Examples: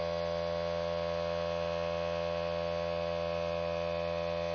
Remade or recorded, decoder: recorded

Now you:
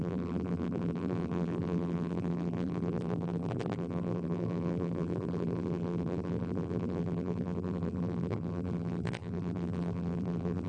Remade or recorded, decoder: remade, vocoder, BigVGAN v2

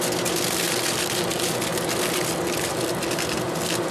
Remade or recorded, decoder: recorded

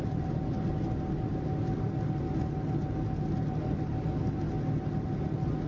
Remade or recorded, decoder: recorded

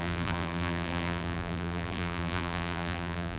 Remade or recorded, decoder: remade, vocoder, BigVGAN v2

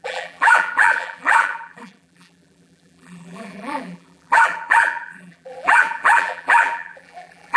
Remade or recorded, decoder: remade, vocoder, BigVGAN v2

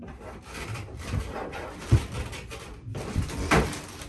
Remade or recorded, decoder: remade, vocoder, BigVGAN v2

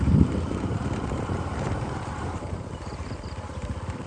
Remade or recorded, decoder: remade, vocoder, BigVGAN v2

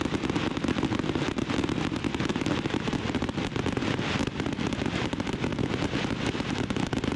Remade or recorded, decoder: recorded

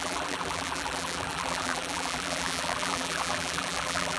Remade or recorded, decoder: remade, vocoder, BigVGAN v2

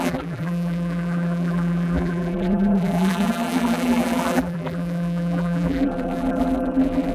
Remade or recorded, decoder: remade, vocoder, BigVGAN v2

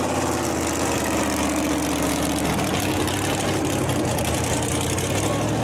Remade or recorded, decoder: recorded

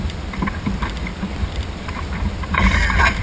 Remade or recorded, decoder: remade, vocoder, BigVGAN v2